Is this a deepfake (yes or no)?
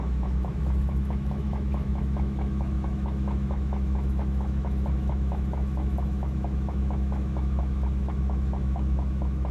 yes